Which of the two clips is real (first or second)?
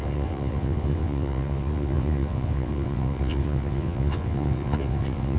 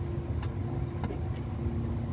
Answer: second